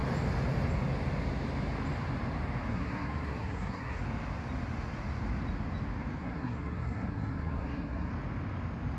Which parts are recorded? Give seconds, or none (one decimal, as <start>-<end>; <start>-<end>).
0.0-2.7; 4.0-6.2; 8.1-9.0